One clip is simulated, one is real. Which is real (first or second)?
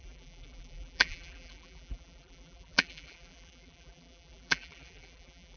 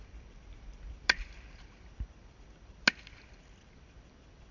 second